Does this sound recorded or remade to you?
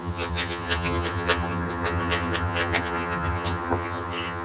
remade